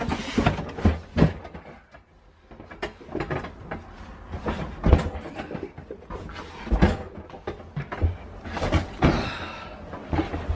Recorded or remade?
recorded